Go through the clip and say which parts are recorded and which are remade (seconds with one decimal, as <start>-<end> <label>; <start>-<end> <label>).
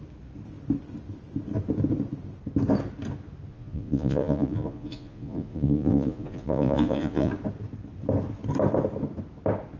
0.0-3.5 recorded; 3.5-7.3 remade; 7.3-9.8 recorded